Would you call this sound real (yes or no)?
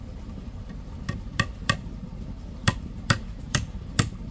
no